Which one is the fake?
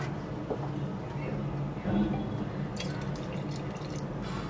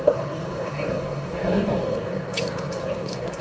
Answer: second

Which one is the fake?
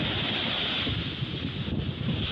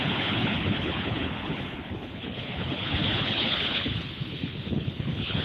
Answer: second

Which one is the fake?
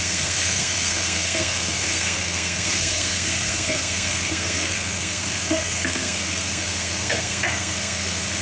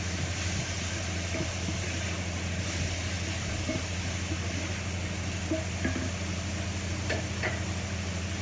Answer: first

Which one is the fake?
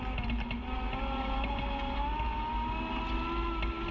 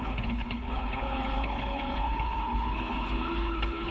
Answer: second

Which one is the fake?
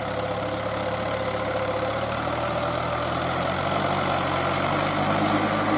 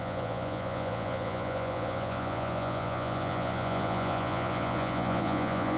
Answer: second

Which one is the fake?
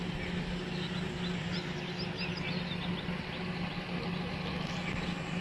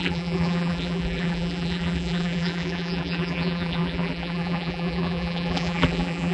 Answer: second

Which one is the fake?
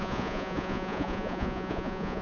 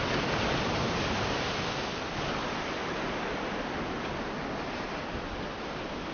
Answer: first